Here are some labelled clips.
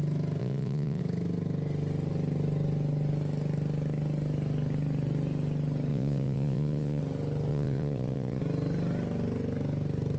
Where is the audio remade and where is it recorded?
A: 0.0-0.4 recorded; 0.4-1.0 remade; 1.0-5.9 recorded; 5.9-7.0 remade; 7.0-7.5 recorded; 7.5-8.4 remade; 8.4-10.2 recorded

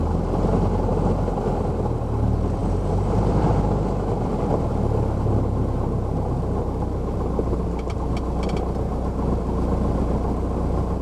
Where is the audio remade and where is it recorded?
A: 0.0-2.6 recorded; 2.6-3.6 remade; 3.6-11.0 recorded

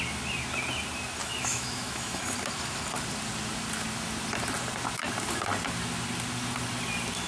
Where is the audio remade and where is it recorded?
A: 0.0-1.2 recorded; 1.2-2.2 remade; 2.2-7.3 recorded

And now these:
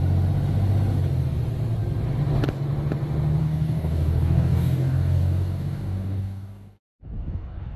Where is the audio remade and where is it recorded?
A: 0.0-3.4 recorded; 3.4-7.8 remade

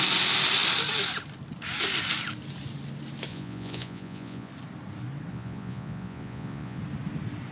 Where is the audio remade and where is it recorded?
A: 0.0-3.3 recorded; 3.3-4.5 remade; 4.5-5.3 recorded; 5.3-6.8 remade; 6.8-7.5 recorded

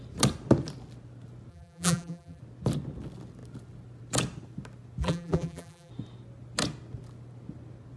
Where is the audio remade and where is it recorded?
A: 0.0-1.5 recorded; 1.5-2.4 remade; 2.4-5.0 recorded; 5.0-5.9 remade; 5.9-8.0 recorded

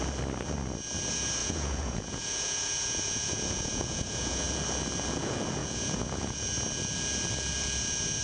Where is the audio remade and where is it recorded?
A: 0.0-1.4 recorded; 1.4-4.5 remade; 4.5-5.6 recorded; 5.6-6.5 remade; 6.5-8.2 recorded